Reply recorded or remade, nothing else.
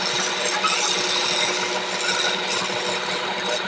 recorded